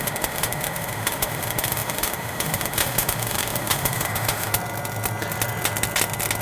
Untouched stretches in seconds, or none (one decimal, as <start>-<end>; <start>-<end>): 4.5-6.4